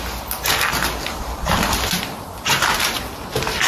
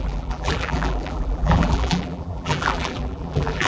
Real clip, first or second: first